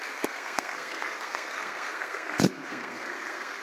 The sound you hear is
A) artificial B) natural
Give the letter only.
A